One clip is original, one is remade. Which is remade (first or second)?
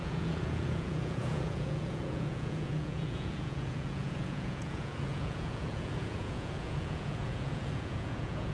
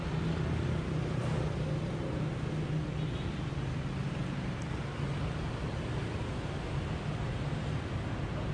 first